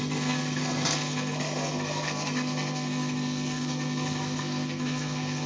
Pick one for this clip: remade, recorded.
remade